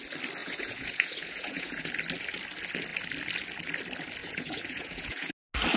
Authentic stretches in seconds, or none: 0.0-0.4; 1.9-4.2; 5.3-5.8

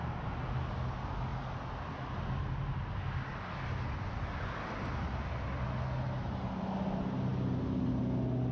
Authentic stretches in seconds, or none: 0.0-8.5

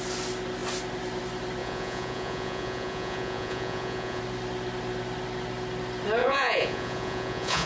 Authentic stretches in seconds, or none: 0.0-1.6; 4.2-6.2